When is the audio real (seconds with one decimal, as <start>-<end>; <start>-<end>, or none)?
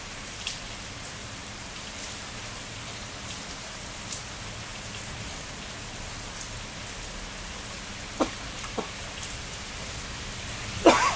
none